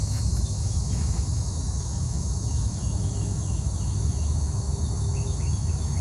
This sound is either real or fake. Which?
fake